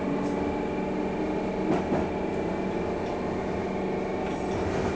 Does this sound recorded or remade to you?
recorded